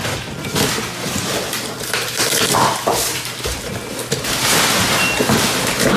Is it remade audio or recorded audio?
recorded